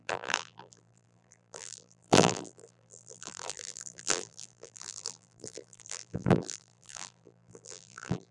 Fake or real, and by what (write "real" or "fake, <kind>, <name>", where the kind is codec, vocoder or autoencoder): fake, vocoder, BigVGAN v2